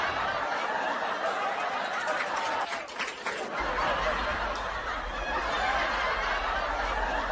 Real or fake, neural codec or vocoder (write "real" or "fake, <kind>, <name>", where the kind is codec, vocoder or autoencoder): real